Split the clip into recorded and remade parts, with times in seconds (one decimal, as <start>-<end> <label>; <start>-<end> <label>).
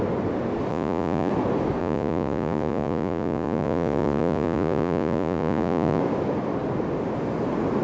0.0-0.7 recorded; 0.7-1.3 remade; 1.3-1.8 recorded; 1.8-6.0 remade; 6.0-7.8 recorded